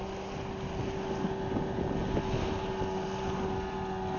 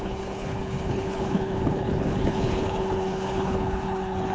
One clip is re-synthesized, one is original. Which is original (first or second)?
first